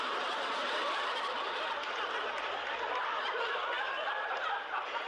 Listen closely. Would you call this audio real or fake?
real